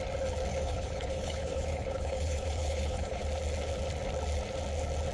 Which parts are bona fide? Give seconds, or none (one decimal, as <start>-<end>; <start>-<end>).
0.0-0.5; 3.2-5.1